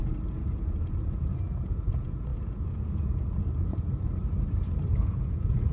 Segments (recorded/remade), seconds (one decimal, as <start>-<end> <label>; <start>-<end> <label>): 0.0-4.1 remade; 4.1-5.0 recorded; 5.0-5.7 remade